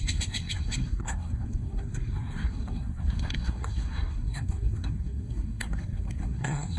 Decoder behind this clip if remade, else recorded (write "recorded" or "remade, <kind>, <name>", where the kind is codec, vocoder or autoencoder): remade, codec, SNAC